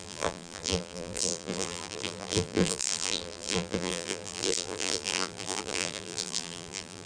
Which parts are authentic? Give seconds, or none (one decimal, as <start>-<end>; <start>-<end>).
none